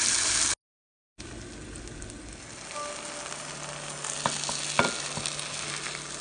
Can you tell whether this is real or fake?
real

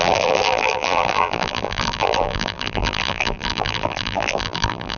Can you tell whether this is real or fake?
fake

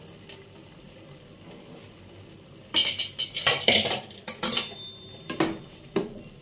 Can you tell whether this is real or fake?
fake